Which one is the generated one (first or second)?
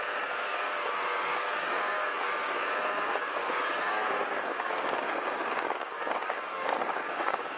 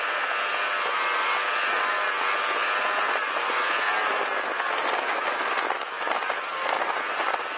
first